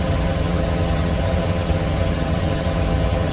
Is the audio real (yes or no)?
no